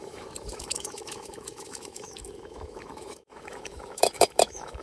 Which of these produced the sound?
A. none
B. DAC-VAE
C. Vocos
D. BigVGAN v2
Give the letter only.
B